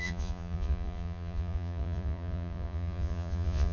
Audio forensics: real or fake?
fake